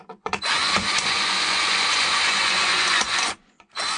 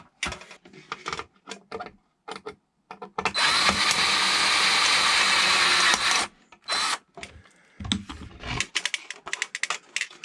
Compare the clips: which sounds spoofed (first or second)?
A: first